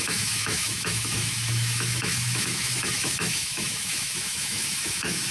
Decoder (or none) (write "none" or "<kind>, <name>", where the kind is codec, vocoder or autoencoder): autoencoder, DAC-VAE